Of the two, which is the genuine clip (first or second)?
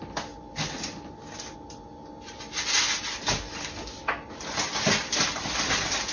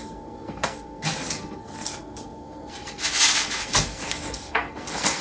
first